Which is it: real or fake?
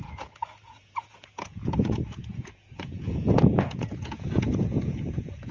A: fake